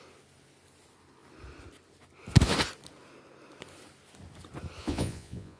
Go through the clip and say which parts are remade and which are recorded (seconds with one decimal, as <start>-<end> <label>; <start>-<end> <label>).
0.0-4.8 recorded; 4.8-5.6 remade